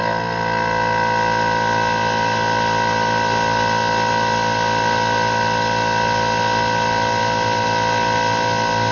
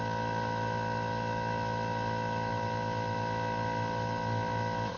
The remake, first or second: second